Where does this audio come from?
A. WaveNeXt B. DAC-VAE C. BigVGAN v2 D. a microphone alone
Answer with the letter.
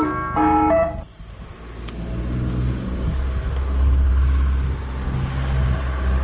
D